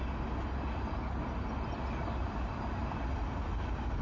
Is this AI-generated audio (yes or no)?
no